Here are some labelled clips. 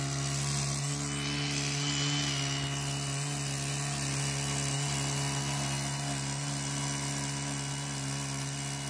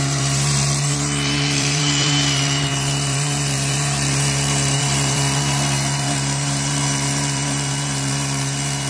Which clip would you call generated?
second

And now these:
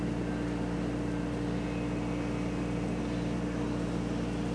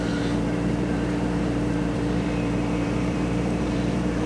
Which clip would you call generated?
second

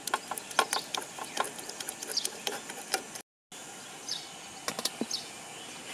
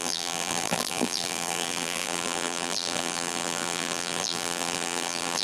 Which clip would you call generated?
second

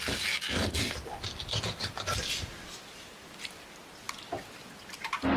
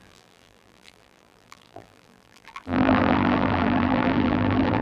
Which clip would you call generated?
second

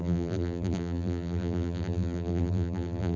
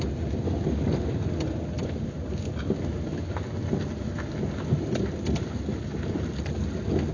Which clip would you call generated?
first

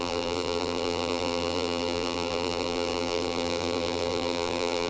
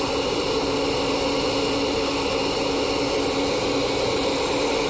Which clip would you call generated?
first